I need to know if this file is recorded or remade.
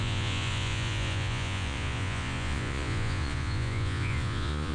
remade